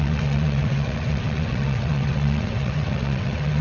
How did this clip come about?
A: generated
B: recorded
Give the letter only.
A